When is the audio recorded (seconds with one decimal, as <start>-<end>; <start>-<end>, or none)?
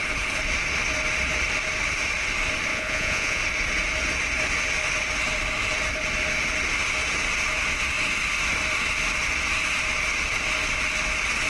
0.0-2.7; 3.4-11.5